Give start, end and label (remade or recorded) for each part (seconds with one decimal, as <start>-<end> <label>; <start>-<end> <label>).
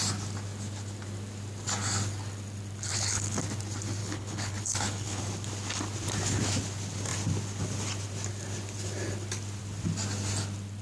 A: 0.0-2.9 recorded; 2.9-3.4 remade; 3.4-4.0 recorded; 4.0-5.2 remade; 5.2-10.8 recorded